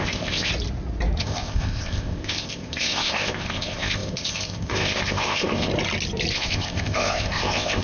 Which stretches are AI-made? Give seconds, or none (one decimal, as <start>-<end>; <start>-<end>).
0.0-0.5; 1.2-5.7; 6.3-7.8